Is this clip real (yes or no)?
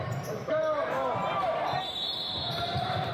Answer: no